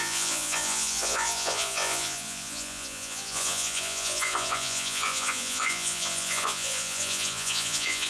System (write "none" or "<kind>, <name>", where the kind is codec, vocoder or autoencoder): vocoder, Vocos